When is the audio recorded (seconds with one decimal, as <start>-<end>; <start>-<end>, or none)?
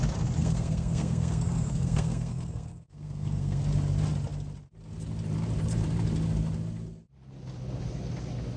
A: 0.0-0.4; 3.6-8.6